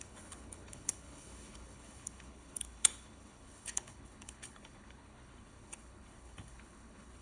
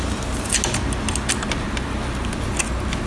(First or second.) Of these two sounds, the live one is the second